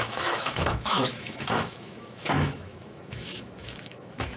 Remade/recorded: remade